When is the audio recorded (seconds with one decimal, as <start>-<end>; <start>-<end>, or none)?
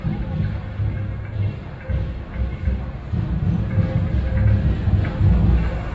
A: 0.0-5.9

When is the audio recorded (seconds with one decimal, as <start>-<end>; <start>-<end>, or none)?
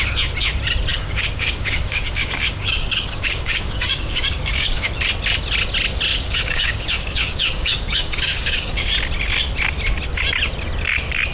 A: 0.0-0.9; 4.9-6.1; 8.9-11.3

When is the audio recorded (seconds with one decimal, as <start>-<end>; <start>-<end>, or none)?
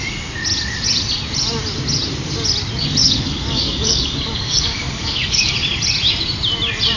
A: 0.0-3.0; 5.5-7.0